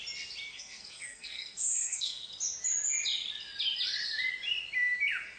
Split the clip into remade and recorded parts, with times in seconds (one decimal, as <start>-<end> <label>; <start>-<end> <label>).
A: 0.0-0.5 recorded; 0.5-2.3 remade; 2.3-5.4 recorded